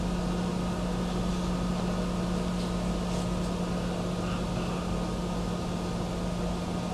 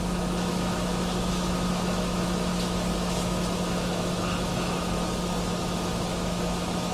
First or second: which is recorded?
first